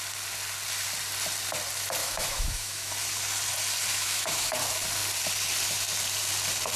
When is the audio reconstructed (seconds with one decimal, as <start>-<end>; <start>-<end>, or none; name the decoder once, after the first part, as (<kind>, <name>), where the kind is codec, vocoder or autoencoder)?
2.0-2.9 (autoencoder, DAC-VAE); 3.9-4.5

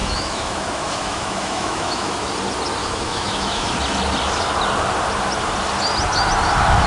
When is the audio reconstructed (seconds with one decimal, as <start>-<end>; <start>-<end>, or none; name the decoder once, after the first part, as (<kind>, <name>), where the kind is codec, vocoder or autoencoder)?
0.0-2.3 (autoencoder, DAC-VAE); 2.8-3.7

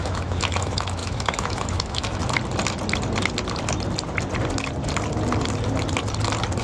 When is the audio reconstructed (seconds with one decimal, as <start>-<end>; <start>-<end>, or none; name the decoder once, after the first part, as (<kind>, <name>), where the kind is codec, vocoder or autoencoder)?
0.0-2.2 (autoencoder, DAC-VAE)

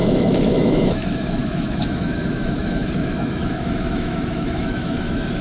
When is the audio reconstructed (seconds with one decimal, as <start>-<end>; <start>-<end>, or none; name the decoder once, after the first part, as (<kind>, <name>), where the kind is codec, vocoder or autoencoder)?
0.0-5.4 (autoencoder, DAC-VAE)